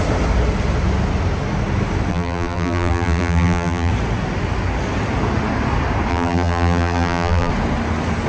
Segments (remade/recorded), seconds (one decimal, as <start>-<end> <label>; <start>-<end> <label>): 0.0-2.1 recorded; 2.1-3.9 remade; 3.9-6.1 recorded; 6.1-7.5 remade; 7.5-8.3 recorded